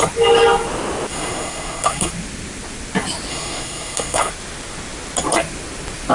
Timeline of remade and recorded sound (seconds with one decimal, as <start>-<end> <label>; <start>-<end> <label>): 0.0-1.1 recorded; 1.1-2.1 remade; 2.1-3.3 recorded; 3.3-4.3 remade; 4.3-6.1 recorded